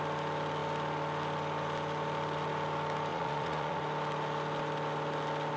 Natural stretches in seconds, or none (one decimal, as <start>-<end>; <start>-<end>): 0.0-3.1; 3.8-5.6

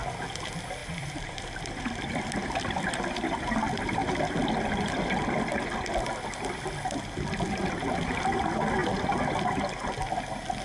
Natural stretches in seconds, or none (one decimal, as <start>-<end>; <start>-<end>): 0.0-0.8; 3.4-4.0; 6.7-10.6